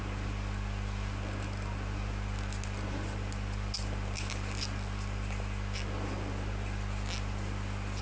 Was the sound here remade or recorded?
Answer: recorded